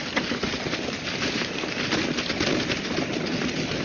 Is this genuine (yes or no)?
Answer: yes